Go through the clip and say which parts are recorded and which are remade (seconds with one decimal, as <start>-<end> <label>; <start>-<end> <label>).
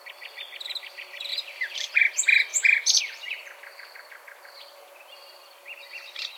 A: 0.0-1.3 recorded; 1.3-2.0 remade; 2.0-2.5 recorded; 2.5-3.0 remade; 3.0-6.4 recorded